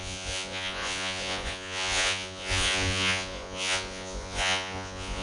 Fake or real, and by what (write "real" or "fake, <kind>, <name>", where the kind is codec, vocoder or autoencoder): fake, vocoder, Vocos